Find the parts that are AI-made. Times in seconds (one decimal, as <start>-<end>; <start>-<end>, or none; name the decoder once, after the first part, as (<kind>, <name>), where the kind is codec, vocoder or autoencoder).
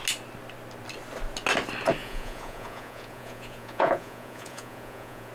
2.0-5.3 (vocoder, Vocos)